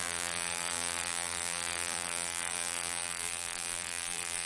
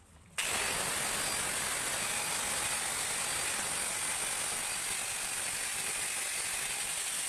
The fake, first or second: first